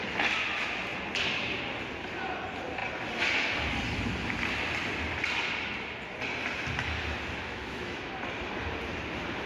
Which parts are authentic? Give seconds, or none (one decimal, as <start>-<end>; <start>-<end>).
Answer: 0.0-7.4; 8.1-9.5